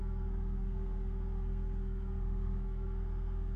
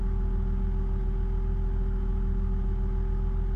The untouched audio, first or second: second